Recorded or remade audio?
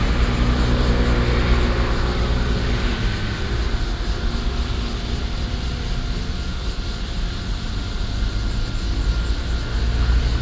recorded